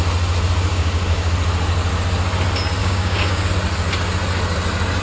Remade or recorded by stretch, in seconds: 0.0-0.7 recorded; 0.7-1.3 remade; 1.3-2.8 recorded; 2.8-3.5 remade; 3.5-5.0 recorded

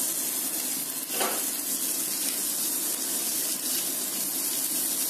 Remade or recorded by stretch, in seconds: 0.0-5.1 recorded

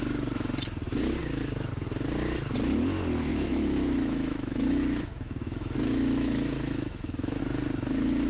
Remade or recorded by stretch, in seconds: 0.0-3.3 recorded; 3.3-7.4 remade; 7.4-8.3 recorded

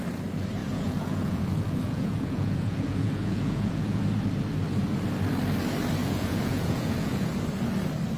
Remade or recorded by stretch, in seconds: 0.0-0.6 recorded; 0.6-4.0 remade; 4.0-6.0 recorded; 6.0-7.3 remade; 7.3-8.2 recorded

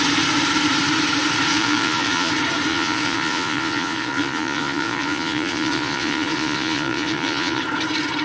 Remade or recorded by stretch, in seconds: 0.0-1.5 recorded; 1.5-2.3 remade; 2.3-2.7 recorded; 2.7-7.6 remade; 7.6-8.2 recorded

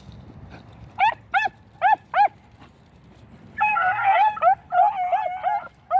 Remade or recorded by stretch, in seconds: 0.0-3.7 recorded; 3.7-4.3 remade; 4.3-6.0 recorded